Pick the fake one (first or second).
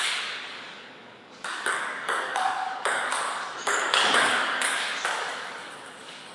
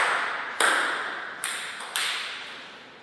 first